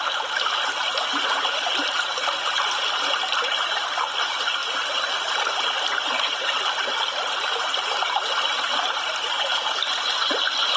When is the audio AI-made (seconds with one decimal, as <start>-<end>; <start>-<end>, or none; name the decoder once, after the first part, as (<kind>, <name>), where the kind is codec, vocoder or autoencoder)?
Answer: 1.1-3.4 (vocoder, BigVGAN v2)